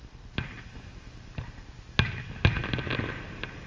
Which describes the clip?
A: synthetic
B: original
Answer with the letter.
B